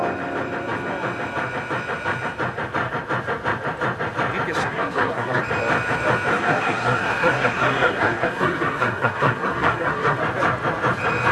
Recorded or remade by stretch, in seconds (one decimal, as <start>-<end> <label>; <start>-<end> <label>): 0.0-4.6 recorded; 4.6-5.4 remade; 5.4-6.3 recorded; 6.3-10.2 remade; 10.2-11.3 recorded